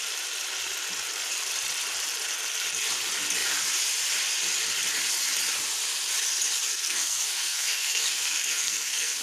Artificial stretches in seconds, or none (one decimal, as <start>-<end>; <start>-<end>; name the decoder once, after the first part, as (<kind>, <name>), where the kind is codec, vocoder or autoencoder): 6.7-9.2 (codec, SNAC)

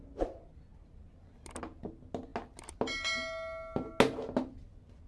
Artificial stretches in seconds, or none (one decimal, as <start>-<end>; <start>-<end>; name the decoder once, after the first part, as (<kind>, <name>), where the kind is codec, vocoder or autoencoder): none

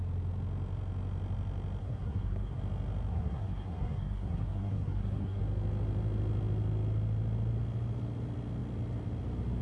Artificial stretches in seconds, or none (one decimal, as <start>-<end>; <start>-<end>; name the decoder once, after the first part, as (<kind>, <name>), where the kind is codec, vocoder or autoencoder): 1.8-2.6 (codec, SNAC); 3.1-5.4

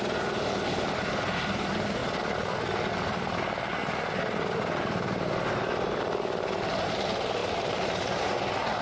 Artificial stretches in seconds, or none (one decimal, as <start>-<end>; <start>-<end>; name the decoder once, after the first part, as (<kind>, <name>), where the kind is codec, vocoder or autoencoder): 7.4-8.0 (vocoder, BigVGAN v2)